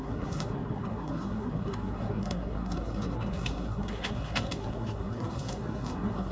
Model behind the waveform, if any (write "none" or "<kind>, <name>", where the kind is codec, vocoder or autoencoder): codec, SNAC